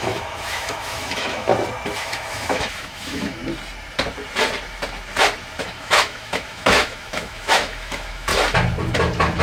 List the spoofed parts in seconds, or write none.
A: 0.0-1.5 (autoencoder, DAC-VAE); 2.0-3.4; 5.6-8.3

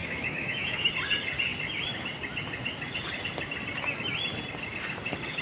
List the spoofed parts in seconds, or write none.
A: 0.0-0.9 (autoencoder, DAC-VAE)